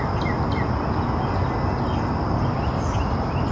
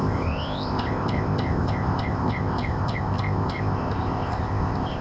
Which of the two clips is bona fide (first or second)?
first